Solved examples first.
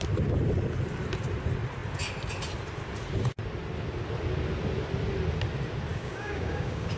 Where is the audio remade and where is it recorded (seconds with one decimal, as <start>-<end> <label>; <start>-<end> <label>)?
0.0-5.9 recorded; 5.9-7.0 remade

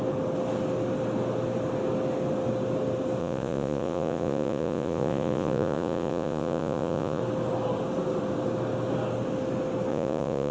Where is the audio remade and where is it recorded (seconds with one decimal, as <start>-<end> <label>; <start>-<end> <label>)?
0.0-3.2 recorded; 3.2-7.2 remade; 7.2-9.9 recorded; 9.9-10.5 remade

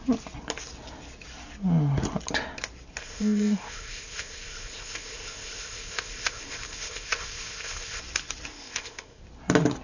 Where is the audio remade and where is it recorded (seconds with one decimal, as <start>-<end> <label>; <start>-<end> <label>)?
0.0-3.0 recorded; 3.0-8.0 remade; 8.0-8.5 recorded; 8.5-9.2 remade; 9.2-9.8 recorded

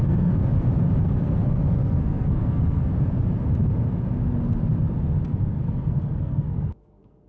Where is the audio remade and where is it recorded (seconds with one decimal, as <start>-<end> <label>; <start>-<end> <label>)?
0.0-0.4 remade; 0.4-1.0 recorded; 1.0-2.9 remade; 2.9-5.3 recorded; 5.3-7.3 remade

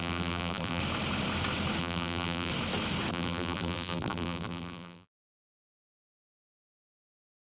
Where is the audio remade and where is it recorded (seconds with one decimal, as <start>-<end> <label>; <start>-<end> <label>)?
0.0-0.8 remade; 0.8-1.8 recorded; 1.8-2.5 remade; 2.5-3.1 recorded; 3.1-7.5 remade

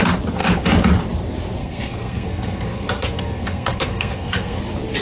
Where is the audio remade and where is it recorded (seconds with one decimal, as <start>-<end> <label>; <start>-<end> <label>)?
0.0-1.6 recorded; 1.6-4.6 remade; 4.6-5.0 recorded